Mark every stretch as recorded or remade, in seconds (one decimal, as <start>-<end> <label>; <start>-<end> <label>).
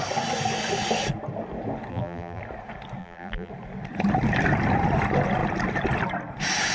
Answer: 0.0-1.9 recorded; 1.9-2.4 remade; 2.4-3.0 recorded; 3.0-3.5 remade; 3.5-6.7 recorded